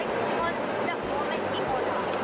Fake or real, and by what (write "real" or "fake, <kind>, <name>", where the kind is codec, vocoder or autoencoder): real